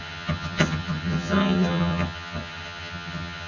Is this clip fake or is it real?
fake